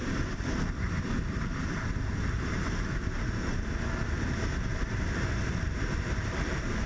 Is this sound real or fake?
fake